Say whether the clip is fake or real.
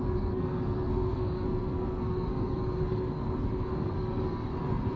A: fake